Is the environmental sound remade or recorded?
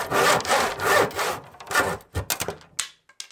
recorded